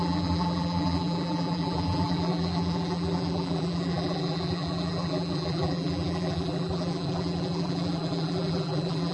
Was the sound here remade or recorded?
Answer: remade